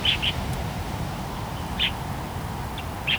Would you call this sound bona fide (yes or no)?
yes